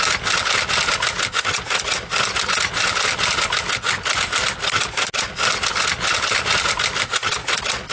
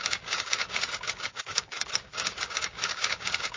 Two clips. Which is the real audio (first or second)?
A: first